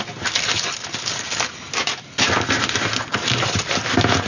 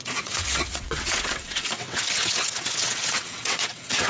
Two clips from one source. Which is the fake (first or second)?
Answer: second